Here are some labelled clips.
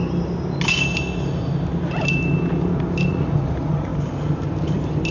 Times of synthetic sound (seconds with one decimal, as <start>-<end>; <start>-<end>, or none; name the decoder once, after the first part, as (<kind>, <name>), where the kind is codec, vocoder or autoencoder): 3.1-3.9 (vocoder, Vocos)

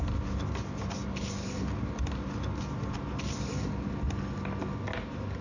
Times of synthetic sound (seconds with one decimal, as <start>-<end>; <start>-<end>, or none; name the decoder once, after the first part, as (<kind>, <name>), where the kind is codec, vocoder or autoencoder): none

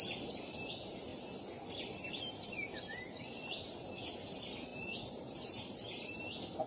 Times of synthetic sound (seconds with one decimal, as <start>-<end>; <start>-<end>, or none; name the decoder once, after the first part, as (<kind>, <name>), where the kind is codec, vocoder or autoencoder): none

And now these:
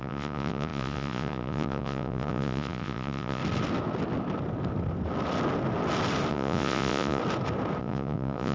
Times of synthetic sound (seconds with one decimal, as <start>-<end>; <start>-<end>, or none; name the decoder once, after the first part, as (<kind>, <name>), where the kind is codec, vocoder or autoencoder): 0.0-3.4 (vocoder, Vocos); 6.3-7.2; 7.8-8.5

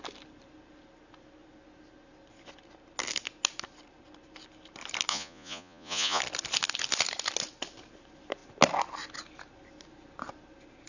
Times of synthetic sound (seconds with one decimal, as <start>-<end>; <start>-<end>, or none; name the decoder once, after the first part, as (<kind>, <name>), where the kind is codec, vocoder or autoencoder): 5.1-6.2 (vocoder, Vocos)

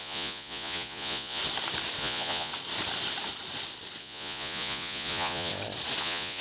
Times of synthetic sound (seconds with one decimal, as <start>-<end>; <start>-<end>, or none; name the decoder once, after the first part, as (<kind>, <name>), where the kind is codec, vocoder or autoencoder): 0.0-1.4 (vocoder, Vocos); 2.0-2.5; 4.0-5.5; 6.0-6.4